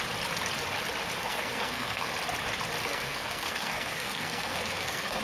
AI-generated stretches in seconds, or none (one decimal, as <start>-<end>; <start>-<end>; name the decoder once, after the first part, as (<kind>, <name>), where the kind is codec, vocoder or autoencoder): 1.2-2.1 (codec, SNAC); 2.8-5.2